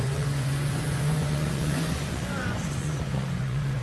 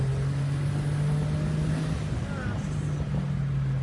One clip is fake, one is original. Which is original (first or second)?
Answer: second